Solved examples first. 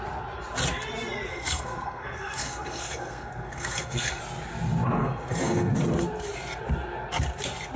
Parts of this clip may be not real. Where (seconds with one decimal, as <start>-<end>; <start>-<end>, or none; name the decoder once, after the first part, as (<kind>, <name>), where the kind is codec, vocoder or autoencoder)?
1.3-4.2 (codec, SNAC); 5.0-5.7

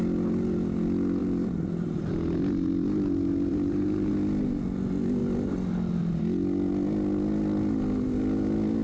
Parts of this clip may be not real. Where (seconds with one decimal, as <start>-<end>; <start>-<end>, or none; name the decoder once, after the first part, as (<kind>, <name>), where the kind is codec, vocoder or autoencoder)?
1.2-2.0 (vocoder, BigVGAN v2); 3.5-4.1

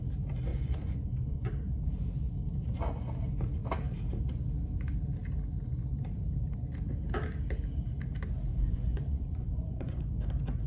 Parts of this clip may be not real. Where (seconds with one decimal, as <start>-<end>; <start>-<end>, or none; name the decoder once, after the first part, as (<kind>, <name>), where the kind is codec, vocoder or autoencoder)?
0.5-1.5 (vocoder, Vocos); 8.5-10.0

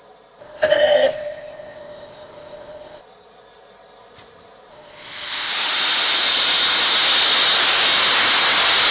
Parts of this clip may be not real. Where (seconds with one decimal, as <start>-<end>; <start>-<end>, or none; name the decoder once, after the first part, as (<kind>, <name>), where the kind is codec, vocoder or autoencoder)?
0.4-3.0 (codec, ZipCodec); 4.7-5.5

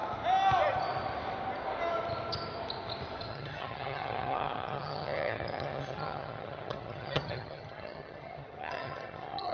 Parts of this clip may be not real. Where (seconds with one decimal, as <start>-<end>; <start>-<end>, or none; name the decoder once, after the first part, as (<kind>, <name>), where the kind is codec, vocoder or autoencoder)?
3.3-9.5 (vocoder, HiFi-GAN)

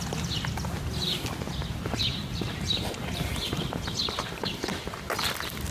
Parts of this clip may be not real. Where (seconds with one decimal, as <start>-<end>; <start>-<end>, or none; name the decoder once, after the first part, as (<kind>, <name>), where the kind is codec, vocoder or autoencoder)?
1.6-5.0 (vocoder, BigVGAN v2)

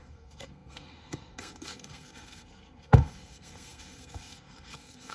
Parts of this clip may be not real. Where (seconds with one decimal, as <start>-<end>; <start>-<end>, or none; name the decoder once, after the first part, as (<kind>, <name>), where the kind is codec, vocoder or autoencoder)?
0.0-5.1 (codec, SNAC)

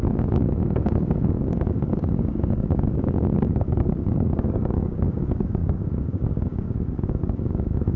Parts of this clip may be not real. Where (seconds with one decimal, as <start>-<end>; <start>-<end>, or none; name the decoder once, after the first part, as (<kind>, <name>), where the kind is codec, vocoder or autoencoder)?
0.0-8.0 (codec, DAC)